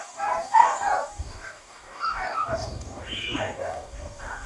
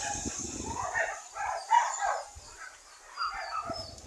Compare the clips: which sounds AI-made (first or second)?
first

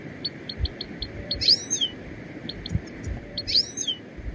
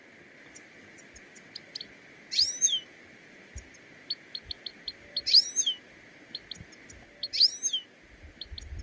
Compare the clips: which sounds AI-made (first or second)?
first